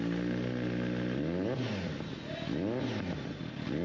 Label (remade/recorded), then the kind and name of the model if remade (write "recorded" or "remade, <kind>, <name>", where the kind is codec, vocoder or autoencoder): recorded